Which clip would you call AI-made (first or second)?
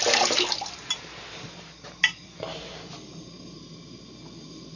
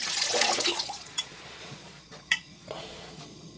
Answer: second